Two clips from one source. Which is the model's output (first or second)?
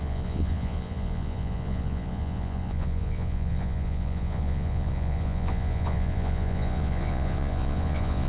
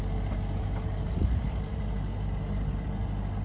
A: first